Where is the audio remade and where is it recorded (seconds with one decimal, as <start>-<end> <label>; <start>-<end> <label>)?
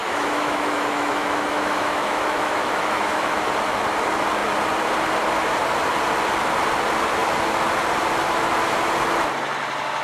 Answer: 0.0-3.4 remade; 3.4-10.0 recorded